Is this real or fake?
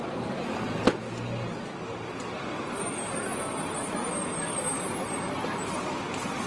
real